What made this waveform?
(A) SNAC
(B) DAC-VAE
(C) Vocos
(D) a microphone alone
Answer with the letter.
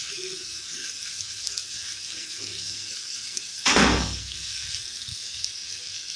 A